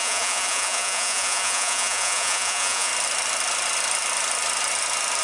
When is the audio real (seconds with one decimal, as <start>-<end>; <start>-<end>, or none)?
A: 2.9-5.2